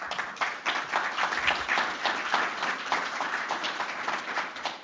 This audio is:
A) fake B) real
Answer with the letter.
B